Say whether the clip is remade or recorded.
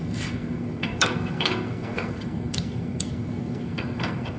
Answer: remade